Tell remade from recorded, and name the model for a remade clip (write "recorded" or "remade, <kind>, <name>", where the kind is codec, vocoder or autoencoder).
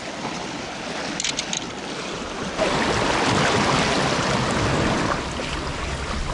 recorded